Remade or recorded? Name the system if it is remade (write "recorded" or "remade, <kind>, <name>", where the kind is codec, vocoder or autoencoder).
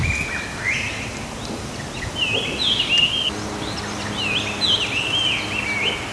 recorded